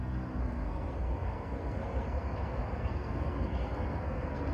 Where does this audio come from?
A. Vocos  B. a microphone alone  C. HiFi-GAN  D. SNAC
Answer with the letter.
D